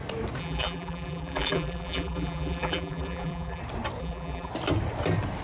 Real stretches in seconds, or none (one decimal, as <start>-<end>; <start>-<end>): 0.0-0.4; 3.6-4.0; 4.5-5.4